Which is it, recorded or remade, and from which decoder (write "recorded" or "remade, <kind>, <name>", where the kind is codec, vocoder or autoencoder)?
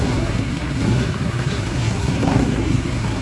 remade, codec, SNAC